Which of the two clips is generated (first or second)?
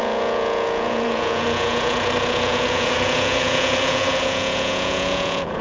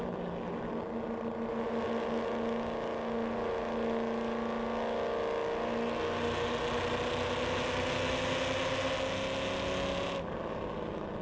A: first